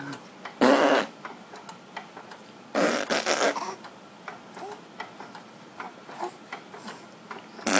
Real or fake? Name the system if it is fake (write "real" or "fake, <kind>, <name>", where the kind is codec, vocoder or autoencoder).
real